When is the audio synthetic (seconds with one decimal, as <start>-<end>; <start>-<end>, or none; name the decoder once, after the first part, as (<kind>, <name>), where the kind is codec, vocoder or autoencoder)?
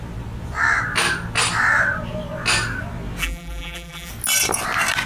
3.2-4.1 (vocoder, BigVGAN v2)